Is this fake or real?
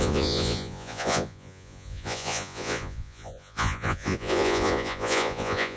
fake